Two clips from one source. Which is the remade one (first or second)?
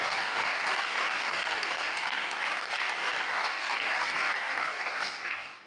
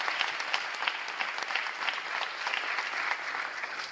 first